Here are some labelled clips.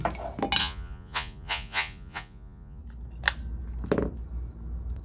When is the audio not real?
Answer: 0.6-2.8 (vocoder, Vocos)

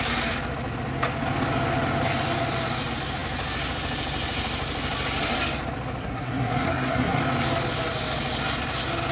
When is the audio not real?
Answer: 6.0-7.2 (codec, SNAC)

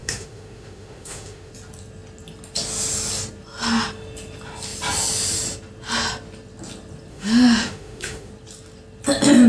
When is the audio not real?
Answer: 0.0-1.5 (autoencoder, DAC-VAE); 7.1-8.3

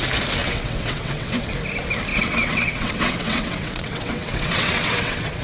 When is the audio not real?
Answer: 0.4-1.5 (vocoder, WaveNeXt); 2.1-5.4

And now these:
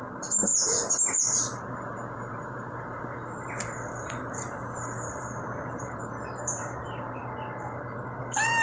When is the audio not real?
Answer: 0.0-7.2 (vocoder, BigVGAN v2); 8.2-8.6